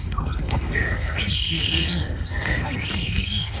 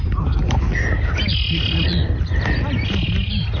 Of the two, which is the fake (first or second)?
first